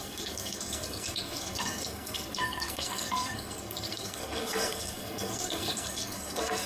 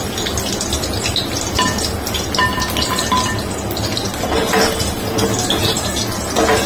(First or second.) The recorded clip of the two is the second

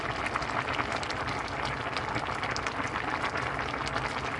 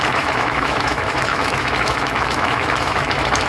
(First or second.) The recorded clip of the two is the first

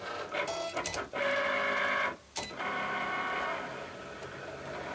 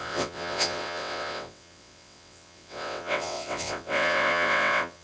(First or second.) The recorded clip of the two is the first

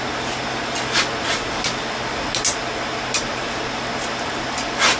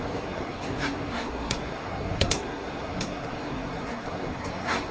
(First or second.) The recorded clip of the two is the first